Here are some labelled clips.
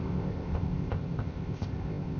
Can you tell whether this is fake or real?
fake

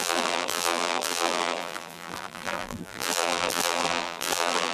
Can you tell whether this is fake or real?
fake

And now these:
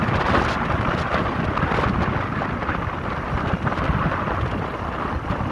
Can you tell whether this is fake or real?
real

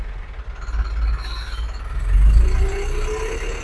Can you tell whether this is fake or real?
real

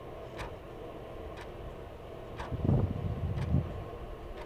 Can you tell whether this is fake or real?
real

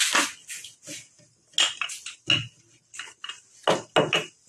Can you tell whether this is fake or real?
real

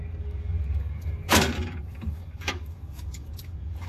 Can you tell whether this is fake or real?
fake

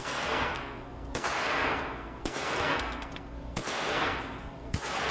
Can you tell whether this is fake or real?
fake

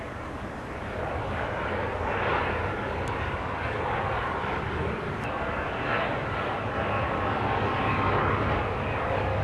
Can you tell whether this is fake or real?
fake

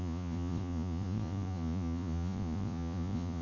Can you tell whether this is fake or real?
fake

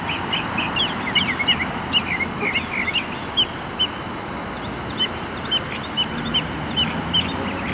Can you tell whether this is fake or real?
real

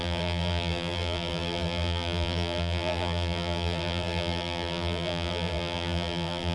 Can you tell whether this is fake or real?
fake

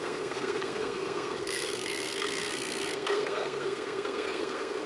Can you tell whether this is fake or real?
fake